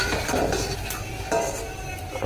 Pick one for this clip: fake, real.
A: real